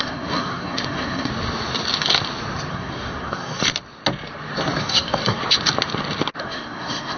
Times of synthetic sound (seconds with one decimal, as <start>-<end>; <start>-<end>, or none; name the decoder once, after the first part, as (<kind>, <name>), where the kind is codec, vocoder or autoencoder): 0.0-1.3 (codec, SNAC); 2.7-3.6; 4.8-5.4; 6.4-7.2

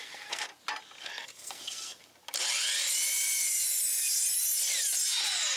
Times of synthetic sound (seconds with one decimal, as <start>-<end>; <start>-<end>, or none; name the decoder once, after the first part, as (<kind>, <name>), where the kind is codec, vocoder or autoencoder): 0.0-0.5 (codec, SNAC); 1.0-2.1

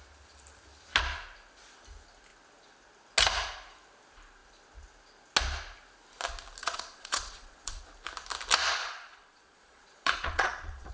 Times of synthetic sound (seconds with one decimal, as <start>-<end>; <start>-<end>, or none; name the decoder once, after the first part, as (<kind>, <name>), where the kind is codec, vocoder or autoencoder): 6.6-7.8 (vocoder, Vocos); 8.8-10.9